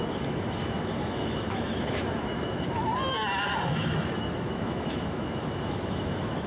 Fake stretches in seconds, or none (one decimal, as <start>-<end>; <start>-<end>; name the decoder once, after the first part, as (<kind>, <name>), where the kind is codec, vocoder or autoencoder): 0.0-2.9 (autoencoder, DAC-VAE); 3.7-6.5